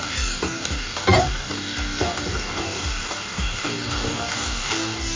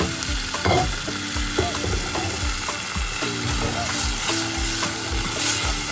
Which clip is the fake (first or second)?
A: first